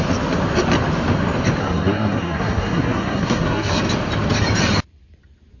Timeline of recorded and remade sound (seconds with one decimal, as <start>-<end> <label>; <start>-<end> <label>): 0.0-1.6 recorded; 1.6-3.8 remade; 3.8-5.6 recorded